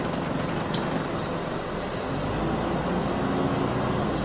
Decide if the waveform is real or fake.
real